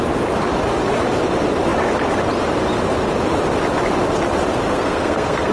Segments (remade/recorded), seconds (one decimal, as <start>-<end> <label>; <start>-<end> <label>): 0.0-4.7 recorded; 4.7-5.5 remade